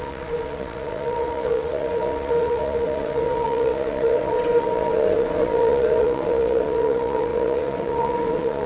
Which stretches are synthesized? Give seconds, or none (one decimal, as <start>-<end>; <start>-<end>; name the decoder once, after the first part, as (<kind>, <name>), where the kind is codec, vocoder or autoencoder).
0.0-8.7 (vocoder, WaveNeXt)